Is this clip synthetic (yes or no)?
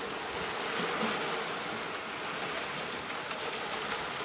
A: no